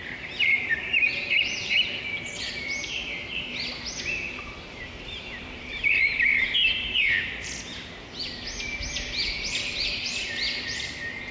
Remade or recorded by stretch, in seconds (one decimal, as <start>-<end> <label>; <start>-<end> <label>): 0.0-3.5 remade; 3.5-4.0 recorded; 4.0-7.5 remade; 7.5-11.3 recorded